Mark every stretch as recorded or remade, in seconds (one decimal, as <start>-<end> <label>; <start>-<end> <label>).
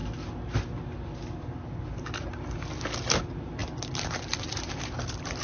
0.0-3.2 recorded; 3.2-3.6 remade; 3.6-4.4 recorded; 4.4-5.4 remade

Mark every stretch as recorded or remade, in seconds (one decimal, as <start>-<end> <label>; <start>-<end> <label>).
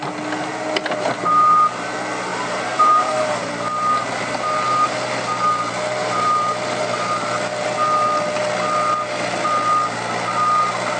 0.0-2.3 recorded; 2.3-3.5 remade; 3.5-6.0 recorded; 6.0-6.5 remade; 6.5-11.0 recorded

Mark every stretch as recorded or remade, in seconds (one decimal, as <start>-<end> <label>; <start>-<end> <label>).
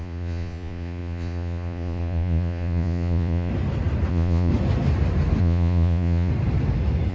0.0-3.5 remade; 3.5-4.1 recorded; 4.1-4.5 remade; 4.5-5.4 recorded; 5.4-6.3 remade; 6.3-7.1 recorded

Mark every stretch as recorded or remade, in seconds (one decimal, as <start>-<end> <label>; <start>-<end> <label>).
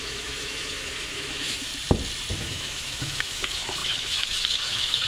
0.0-1.7 remade; 1.7-2.4 recorded; 2.4-5.1 remade